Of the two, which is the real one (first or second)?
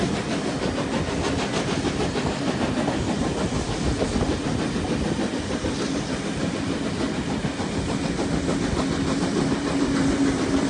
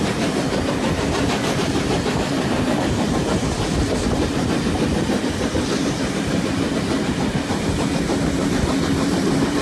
first